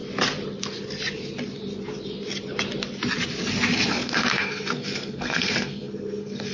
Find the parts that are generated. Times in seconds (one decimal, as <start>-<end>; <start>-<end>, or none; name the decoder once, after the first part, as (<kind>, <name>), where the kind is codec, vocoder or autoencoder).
3.9-6.5 (codec, SNAC)